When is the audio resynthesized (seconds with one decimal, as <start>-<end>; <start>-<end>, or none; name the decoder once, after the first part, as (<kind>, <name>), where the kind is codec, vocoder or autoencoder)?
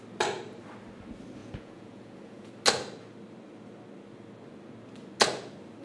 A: 1.4-2.5 (vocoder, Vocos)